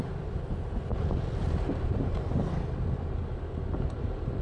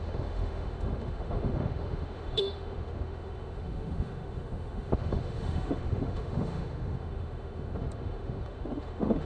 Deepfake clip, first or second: second